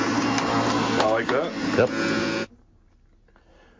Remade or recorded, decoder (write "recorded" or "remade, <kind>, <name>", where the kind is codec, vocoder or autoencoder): recorded